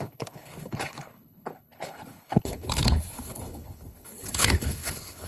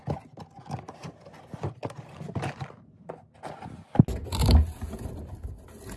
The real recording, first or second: second